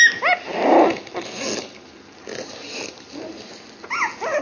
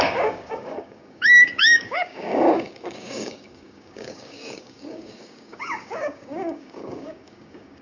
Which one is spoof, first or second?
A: second